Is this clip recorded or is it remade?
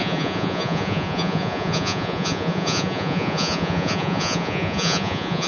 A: remade